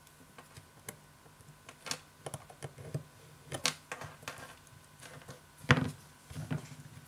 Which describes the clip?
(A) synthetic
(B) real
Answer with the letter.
B